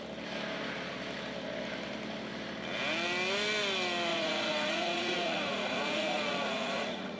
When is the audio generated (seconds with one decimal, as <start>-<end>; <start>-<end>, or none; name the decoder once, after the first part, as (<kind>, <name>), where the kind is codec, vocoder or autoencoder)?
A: 4.1-7.2 (vocoder, Vocos)